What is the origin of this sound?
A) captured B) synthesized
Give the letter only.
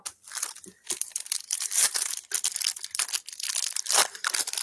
A